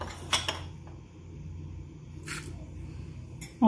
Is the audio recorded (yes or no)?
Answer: yes